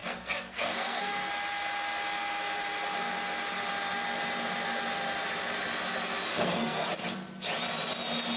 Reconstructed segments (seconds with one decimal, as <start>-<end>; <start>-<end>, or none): 0.0-1.3; 6.3-6.9